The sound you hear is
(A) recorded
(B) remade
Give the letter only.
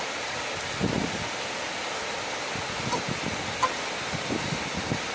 A